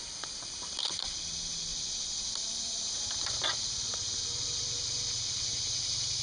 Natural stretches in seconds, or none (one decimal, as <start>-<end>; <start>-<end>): 1.1-3.9; 4.6-6.2

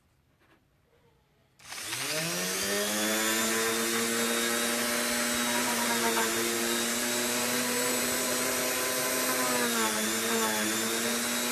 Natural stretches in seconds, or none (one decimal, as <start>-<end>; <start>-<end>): 0.0-5.6; 8.6-11.5

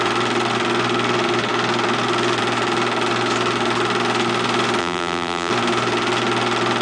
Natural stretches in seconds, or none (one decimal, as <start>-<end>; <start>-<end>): 0.0-4.8; 5.5-6.8

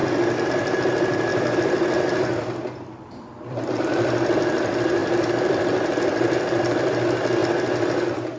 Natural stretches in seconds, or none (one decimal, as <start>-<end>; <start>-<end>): 0.0-1.3; 3.6-5.0; 6.9-8.4

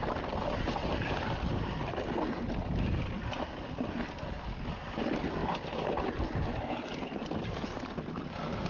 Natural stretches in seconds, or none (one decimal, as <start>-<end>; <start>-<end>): 0.0-5.4; 6.1-8.7

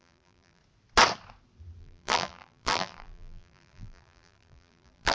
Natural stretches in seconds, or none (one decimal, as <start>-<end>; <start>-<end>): 0.6-1.8